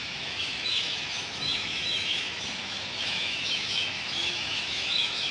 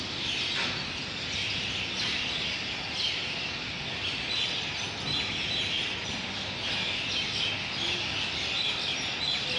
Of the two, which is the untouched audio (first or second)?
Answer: second